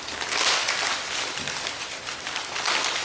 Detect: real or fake real